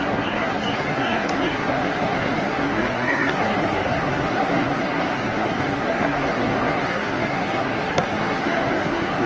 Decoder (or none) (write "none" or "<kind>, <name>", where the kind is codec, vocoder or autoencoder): codec, SNAC